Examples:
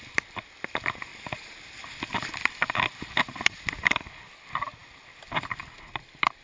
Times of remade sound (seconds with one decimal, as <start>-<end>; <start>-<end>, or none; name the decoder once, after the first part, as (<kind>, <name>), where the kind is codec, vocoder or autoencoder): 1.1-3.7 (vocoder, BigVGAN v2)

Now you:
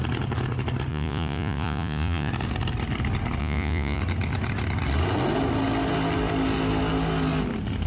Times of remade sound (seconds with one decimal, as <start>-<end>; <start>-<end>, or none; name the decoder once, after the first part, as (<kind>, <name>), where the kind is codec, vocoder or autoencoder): 0.9-2.3 (vocoder, Vocos); 3.4-4.0

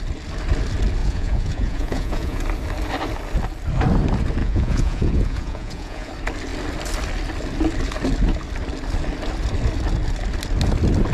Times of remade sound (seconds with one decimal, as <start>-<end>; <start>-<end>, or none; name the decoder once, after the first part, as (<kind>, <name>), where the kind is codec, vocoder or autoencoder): 1.0-2.4 (vocoder, Vocos); 4.4-6.1

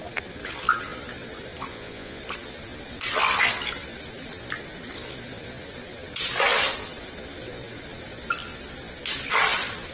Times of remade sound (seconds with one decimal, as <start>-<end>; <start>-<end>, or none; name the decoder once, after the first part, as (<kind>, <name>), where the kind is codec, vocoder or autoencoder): 1.7-2.2 (vocoder, Vocos)

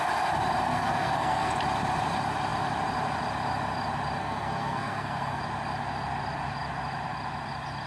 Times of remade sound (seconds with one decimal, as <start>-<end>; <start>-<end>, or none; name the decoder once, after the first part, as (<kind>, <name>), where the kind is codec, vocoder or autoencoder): 0.7-1.5 (codec, SNAC); 4.2-5.4